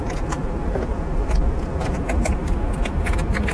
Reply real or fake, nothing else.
real